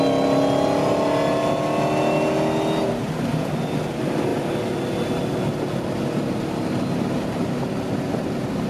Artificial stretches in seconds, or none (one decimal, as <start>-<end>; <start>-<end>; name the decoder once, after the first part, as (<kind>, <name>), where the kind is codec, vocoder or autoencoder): none